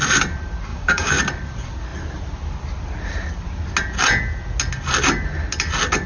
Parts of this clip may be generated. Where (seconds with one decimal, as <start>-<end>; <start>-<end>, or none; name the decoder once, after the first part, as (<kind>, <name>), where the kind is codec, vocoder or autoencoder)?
0.7-1.2 (codec, DAC)